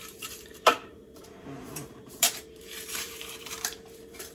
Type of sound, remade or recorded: remade